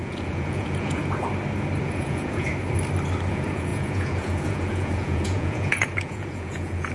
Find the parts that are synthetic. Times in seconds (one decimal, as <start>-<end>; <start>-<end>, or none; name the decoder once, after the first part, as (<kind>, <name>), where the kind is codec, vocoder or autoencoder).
0.0-1.0 (vocoder, Vocos); 1.8-2.5; 3.3-6.9